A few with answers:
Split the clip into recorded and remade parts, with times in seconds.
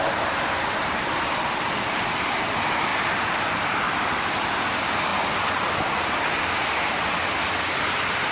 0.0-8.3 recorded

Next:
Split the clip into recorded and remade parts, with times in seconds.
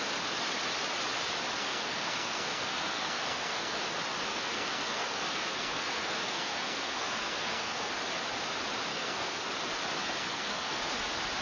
0.0-1.6 recorded; 1.6-3.8 remade; 3.8-4.3 recorded; 4.3-7.9 remade; 7.9-8.9 recorded; 8.9-9.5 remade; 9.5-10.0 recorded; 10.0-10.8 remade; 10.8-11.4 recorded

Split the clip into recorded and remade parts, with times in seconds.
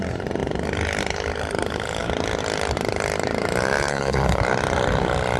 0.0-3.9 recorded; 3.9-4.4 remade; 4.4-5.4 recorded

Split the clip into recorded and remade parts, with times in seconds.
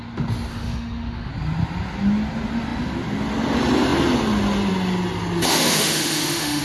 0.0-0.5 recorded; 0.5-1.3 remade; 1.3-5.5 recorded; 5.5-6.6 remade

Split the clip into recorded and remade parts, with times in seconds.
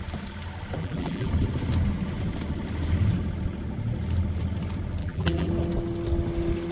0.0-0.8 recorded; 0.8-1.3 remade; 1.3-5.0 recorded; 5.0-5.5 remade; 5.5-6.7 recorded